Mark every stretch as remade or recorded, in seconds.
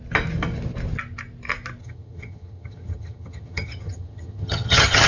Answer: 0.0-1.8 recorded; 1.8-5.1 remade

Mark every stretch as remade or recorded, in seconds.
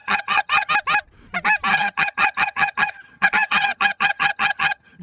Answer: 0.0-0.7 remade; 0.7-1.7 recorded; 1.7-5.0 remade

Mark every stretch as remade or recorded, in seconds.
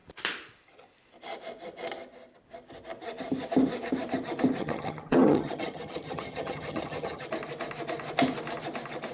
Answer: 0.0-4.6 recorded; 4.6-7.2 remade; 7.2-9.1 recorded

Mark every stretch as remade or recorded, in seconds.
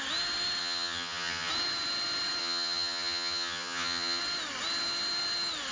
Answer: 0.0-0.6 recorded; 0.6-1.5 remade; 1.5-2.4 recorded; 2.4-4.2 remade; 4.2-5.7 recorded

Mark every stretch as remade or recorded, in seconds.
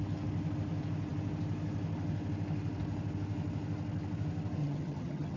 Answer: 0.0-4.6 recorded; 4.6-5.4 remade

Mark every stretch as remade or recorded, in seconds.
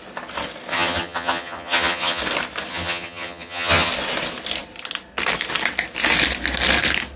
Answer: 0.0-0.7 recorded; 0.7-2.2 remade; 2.2-2.7 recorded; 2.7-3.9 remade; 3.9-7.2 recorded